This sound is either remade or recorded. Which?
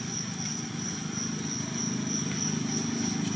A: recorded